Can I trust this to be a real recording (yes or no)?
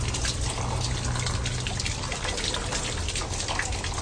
yes